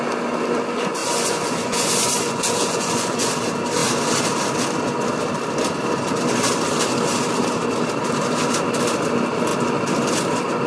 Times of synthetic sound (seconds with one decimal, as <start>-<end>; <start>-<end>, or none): 1.0-3.3